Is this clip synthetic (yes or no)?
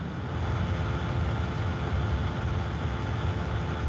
no